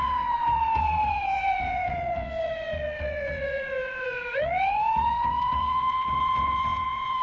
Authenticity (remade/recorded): remade